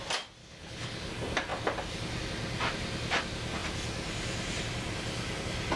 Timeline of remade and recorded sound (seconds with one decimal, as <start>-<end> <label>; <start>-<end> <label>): 0.0-0.4 recorded; 0.4-1.1 remade; 1.1-5.8 recorded

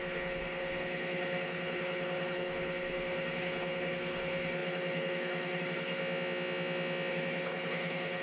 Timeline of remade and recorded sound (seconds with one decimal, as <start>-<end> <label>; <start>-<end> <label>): 0.0-6.0 remade; 6.0-7.1 recorded; 7.1-8.2 remade

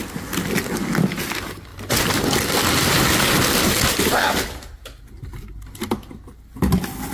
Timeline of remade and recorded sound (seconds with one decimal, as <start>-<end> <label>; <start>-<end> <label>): 0.0-1.7 recorded; 1.7-3.0 remade; 3.0-7.1 recorded

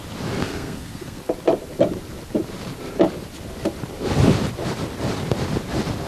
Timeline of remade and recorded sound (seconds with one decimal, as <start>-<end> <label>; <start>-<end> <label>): 0.0-0.4 recorded; 0.4-1.2 remade; 1.2-6.1 recorded